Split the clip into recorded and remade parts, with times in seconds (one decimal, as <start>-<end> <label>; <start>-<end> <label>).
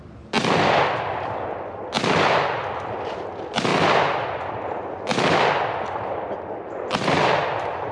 0.0-7.9 recorded